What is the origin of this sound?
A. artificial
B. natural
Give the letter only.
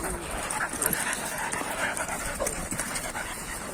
B